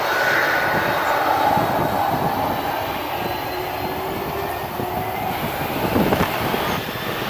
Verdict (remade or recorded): recorded